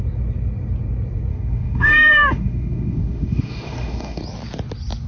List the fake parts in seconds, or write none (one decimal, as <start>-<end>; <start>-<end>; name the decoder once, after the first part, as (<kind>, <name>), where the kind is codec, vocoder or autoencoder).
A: 1.3-4.2 (autoencoder, DAC-VAE)